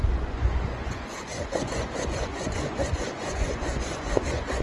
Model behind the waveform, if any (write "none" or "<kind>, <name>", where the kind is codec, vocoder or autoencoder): vocoder, Vocos